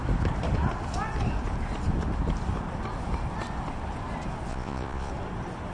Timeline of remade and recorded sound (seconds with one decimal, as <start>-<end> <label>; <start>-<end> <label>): 0.0-4.5 recorded; 4.5-5.1 remade; 5.1-5.7 recorded